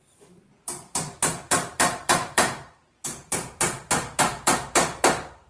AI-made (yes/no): yes